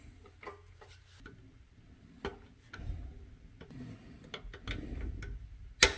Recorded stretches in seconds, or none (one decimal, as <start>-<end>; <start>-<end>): 0.0-6.0